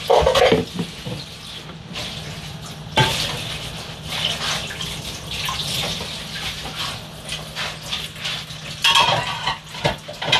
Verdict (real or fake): real